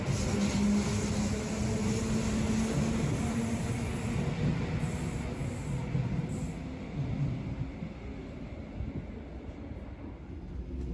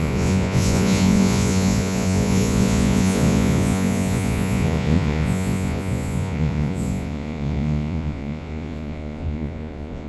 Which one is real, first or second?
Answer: first